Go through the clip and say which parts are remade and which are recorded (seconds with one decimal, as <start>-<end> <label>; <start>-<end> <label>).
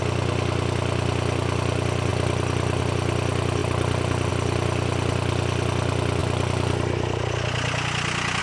0.0-8.4 recorded